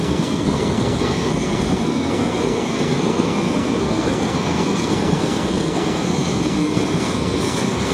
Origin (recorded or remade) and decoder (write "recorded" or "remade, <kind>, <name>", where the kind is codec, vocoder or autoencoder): remade, codec, SNAC